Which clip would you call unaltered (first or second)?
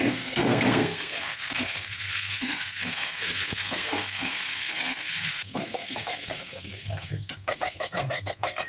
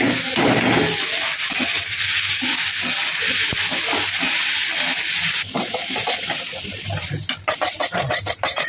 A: second